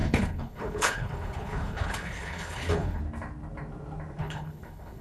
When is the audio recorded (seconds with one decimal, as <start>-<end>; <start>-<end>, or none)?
3.0-4.2